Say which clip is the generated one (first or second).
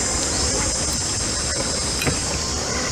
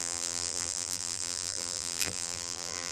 second